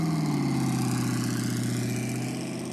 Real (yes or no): yes